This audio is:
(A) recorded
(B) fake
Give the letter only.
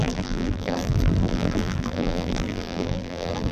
B